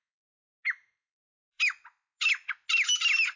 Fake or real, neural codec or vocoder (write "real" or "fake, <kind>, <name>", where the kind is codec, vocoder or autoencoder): real